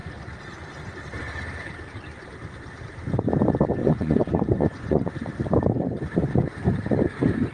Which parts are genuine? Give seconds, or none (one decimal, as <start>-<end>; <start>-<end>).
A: 0.0-3.8; 5.1-7.5